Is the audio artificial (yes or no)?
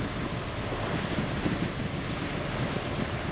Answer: yes